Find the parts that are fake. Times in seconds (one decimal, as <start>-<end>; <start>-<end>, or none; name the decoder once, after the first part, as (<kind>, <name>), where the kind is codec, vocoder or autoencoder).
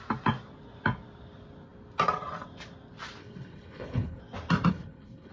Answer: 3.2-4.2 (codec, HILCodec); 4.7-5.3